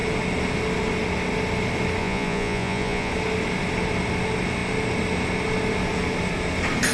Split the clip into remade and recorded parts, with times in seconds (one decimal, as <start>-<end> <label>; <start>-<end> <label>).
0.0-2.0 recorded; 2.0-3.1 remade; 3.1-6.9 recorded